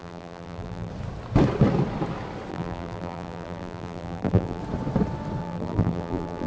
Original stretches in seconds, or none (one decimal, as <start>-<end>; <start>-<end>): 0.9-2.5; 4.6-5.4